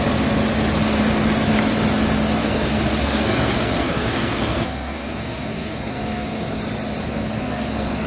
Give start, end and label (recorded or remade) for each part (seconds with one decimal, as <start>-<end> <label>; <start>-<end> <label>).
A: 0.0-2.4 recorded; 2.4-6.6 remade; 6.6-7.0 recorded; 7.0-8.1 remade